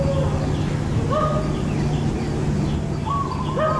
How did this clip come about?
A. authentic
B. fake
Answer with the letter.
A